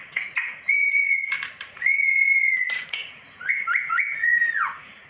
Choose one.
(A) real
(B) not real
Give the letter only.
B